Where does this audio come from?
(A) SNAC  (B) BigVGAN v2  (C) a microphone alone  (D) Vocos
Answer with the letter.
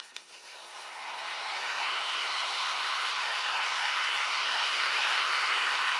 A